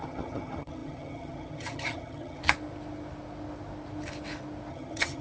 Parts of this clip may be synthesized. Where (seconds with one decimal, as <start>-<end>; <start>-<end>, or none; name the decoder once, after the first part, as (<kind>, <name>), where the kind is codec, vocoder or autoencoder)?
0.0-2.4 (vocoder, HiFi-GAN); 4.7-5.2